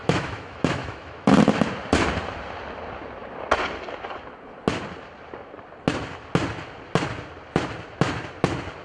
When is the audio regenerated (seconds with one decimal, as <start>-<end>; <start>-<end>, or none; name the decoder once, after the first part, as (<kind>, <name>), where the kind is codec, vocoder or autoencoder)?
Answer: 0.0-1.3 (autoencoder, DAC-VAE)